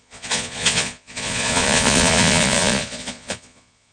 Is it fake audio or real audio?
fake